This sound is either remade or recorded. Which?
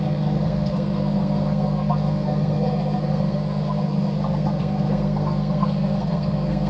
remade